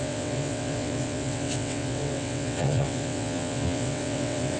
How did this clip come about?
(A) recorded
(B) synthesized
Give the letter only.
B